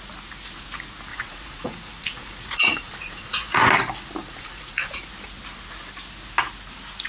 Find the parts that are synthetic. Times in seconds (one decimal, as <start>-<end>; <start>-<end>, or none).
1.1-3.7; 4.2-5.0